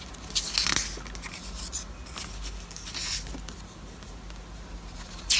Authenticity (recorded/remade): recorded